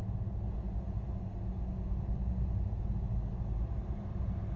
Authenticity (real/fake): real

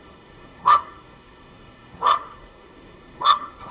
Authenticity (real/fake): fake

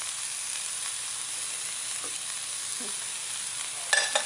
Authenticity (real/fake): real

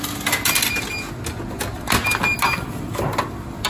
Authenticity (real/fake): real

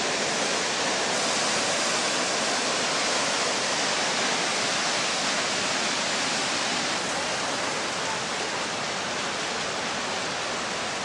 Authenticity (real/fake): real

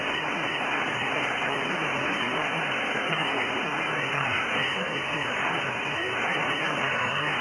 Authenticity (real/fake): fake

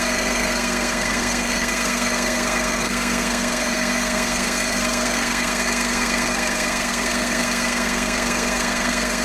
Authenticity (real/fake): fake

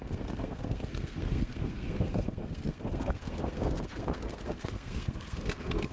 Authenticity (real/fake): fake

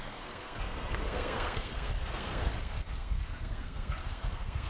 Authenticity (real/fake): fake